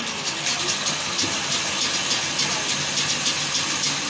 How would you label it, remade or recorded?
recorded